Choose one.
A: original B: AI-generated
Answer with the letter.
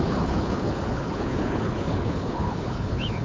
B